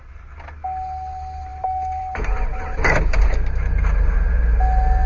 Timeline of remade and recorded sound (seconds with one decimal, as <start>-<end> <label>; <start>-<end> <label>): 0.0-5.1 recorded